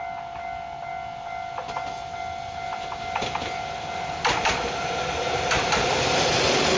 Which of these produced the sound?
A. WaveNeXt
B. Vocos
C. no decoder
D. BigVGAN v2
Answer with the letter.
C